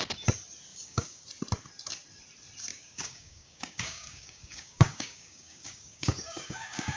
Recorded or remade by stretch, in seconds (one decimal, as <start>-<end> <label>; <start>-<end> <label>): 0.0-0.7 recorded; 0.7-1.2 remade; 1.2-2.7 recorded; 2.7-7.0 remade